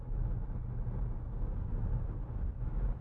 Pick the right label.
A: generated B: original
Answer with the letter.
B